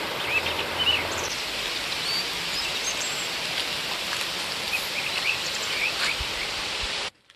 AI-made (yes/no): no